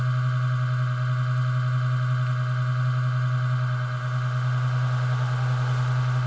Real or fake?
real